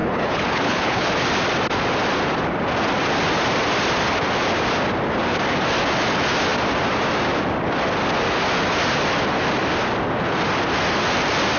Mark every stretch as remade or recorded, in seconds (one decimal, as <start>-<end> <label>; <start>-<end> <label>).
0.0-1.1 remade; 1.1-11.6 recorded